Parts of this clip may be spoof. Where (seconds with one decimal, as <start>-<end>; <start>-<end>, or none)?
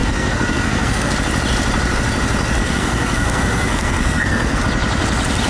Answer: 0.0-1.1; 2.6-4.6